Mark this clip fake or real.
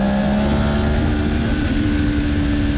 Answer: real